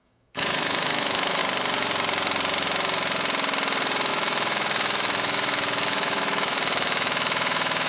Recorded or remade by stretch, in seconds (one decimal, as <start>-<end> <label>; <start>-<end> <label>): 0.0-1.4 remade; 1.4-4.1 recorded; 4.1-7.9 remade

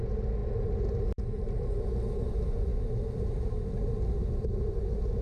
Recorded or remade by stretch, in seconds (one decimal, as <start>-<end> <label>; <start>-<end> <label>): 0.0-5.2 recorded

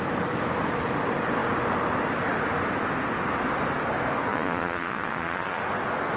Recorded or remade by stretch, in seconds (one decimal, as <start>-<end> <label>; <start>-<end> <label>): 0.0-4.3 recorded; 4.3-5.6 remade; 5.6-6.2 recorded

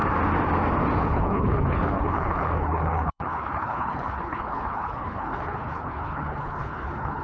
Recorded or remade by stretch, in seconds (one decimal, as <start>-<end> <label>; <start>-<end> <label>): 0.0-1.0 recorded; 1.0-7.2 remade